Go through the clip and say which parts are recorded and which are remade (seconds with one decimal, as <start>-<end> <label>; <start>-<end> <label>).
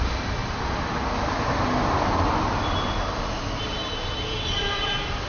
0.0-0.4 remade; 0.4-3.6 recorded; 3.6-5.3 remade